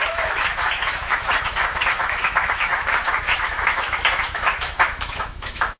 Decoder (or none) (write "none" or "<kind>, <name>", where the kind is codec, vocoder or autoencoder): autoencoder, DAC-VAE